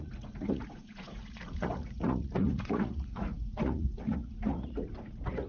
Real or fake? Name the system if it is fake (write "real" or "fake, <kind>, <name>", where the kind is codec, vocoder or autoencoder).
fake, vocoder, Vocos